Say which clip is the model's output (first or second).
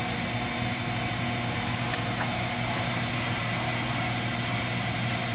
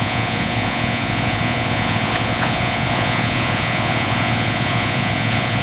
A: second